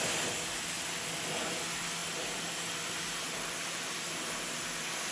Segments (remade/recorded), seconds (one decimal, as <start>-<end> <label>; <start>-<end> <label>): 0.0-5.1 recorded